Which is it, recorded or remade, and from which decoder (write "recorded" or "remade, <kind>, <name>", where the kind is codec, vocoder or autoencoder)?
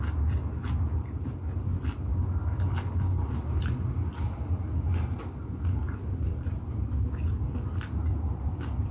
recorded